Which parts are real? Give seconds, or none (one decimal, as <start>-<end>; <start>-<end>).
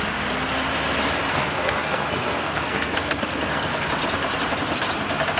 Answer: 0.0-1.3; 3.9-5.4